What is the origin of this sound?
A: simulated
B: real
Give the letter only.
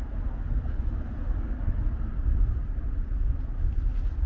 B